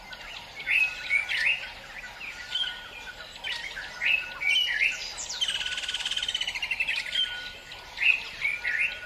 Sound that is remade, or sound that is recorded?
recorded